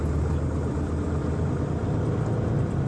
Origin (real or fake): real